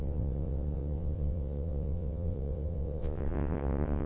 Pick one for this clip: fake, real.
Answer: fake